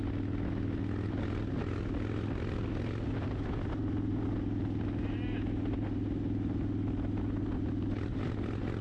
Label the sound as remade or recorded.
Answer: recorded